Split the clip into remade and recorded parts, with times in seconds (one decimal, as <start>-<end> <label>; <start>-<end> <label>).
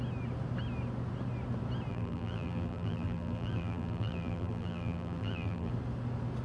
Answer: 0.0-1.9 recorded; 1.9-5.7 remade; 5.7-6.4 recorded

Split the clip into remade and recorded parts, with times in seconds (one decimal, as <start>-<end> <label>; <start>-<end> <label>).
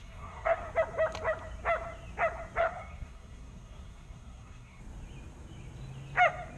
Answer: 0.0-0.6 remade; 0.6-2.6 recorded; 2.6-4.8 remade; 4.8-6.6 recorded